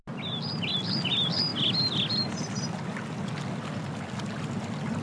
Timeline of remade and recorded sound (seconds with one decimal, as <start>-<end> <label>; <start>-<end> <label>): 0.0-5.0 recorded